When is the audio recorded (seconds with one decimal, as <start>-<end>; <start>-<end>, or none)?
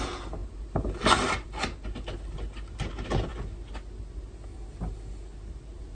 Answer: 0.0-5.9